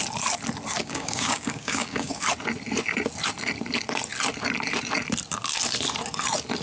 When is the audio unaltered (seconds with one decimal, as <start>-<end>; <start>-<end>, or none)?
0.0-0.8; 2.2-6.6